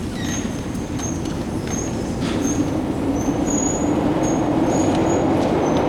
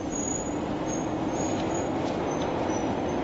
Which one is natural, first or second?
second